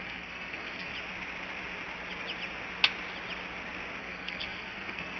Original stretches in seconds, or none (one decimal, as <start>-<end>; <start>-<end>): 0.9-4.0